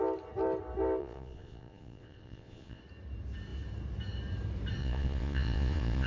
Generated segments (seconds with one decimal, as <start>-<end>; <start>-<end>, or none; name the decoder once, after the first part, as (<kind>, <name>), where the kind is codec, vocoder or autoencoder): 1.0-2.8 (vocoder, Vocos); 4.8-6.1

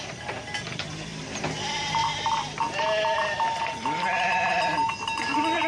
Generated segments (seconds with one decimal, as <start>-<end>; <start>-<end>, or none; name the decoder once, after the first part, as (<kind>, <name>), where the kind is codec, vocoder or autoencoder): none

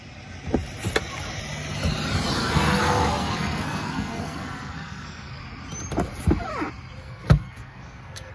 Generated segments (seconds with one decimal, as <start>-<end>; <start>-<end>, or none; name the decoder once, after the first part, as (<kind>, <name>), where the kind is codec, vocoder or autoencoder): 2.4-5.4 (codec, SNAC); 7.0-8.3

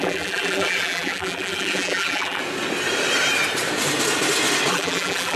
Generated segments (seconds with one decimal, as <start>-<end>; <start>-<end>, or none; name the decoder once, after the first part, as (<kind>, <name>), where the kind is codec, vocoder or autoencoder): 0.0-2.4 (vocoder, BigVGAN v2); 4.7-5.4